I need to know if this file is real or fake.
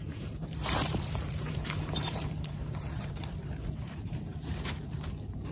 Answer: fake